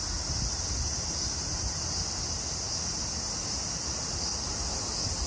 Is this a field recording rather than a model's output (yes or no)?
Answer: yes